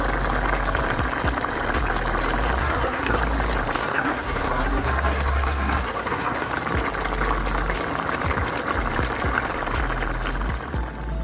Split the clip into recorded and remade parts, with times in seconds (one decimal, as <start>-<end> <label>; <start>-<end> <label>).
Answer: 0.0-2.6 recorded; 2.6-3.2 remade; 3.2-3.8 recorded; 3.8-6.5 remade; 6.5-11.2 recorded